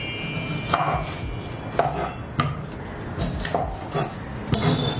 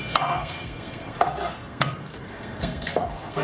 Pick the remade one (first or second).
second